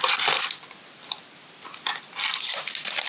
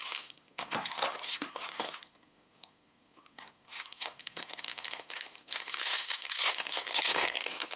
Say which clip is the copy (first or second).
second